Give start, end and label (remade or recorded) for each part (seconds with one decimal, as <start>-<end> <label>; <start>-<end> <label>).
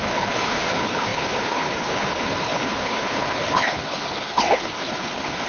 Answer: 0.0-5.5 remade